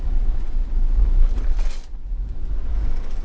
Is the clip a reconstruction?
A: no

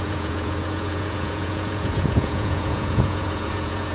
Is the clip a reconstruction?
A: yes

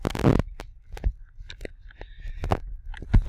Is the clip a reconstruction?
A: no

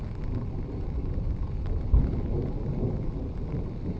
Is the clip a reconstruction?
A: no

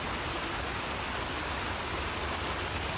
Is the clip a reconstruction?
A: no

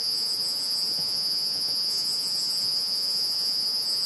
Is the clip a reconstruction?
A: yes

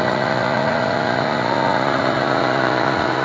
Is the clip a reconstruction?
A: yes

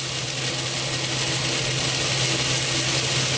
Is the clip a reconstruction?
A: no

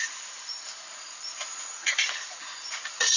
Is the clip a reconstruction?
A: yes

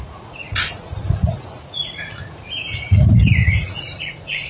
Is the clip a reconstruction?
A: yes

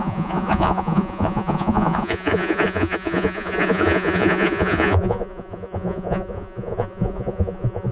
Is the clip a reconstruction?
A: yes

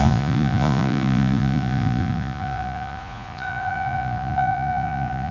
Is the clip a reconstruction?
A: yes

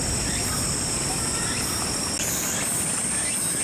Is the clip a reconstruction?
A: no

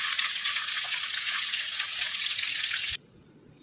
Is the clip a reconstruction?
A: yes